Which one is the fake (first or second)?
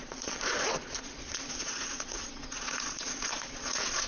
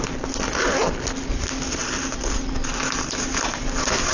first